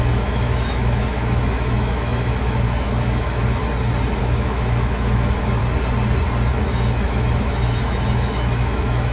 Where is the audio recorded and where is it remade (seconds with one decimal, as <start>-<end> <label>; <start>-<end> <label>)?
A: 0.0-3.6 remade; 3.6-4.2 recorded; 4.2-5.6 remade; 5.6-6.5 recorded; 6.5-9.1 remade